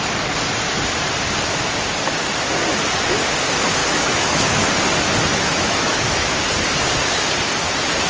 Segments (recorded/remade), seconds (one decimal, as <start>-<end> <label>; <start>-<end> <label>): 0.0-3.8 recorded; 3.8-4.7 remade; 4.7-5.3 recorded; 5.3-6.4 remade; 6.4-8.1 recorded